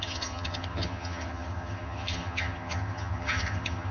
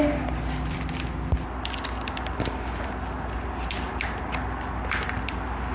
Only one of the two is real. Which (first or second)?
second